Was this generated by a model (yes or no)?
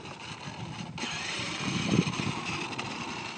no